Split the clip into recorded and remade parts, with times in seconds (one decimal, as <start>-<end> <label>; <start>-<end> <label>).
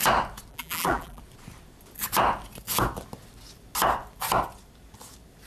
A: 0.0-0.5 recorded; 0.5-1.2 remade; 1.2-5.5 recorded